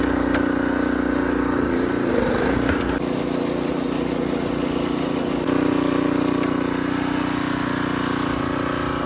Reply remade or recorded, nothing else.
recorded